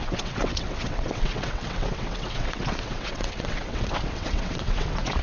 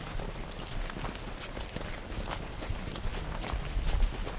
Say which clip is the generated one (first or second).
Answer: first